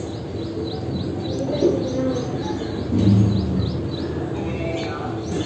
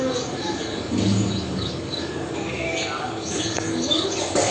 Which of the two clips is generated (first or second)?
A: second